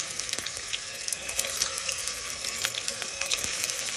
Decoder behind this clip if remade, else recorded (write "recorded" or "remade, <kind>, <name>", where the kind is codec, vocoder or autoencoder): remade, codec, SNAC